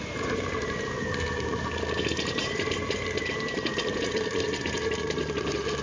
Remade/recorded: remade